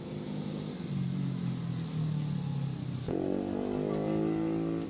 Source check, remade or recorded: recorded